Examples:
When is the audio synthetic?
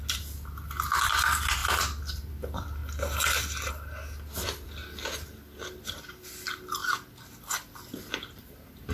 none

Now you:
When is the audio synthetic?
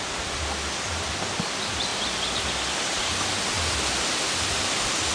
none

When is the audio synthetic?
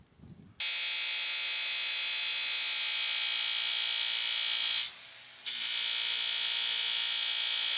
none